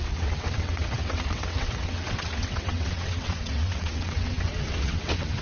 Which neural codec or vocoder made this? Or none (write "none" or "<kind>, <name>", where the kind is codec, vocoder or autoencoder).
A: vocoder, WaveNeXt